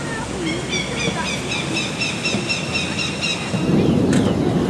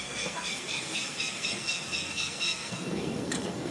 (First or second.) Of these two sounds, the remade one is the second